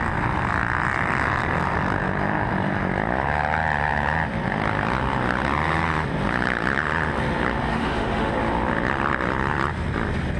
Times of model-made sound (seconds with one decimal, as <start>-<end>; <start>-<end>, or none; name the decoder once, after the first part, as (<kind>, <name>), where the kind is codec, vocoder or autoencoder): 7.7-8.3 (autoencoder, DAC-VAE)